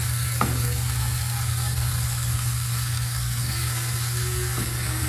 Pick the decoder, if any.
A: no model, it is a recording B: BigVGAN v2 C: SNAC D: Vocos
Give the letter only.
C